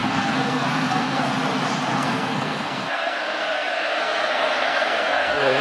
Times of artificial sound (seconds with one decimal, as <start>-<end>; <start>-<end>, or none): 0.0-1.3; 1.9-5.6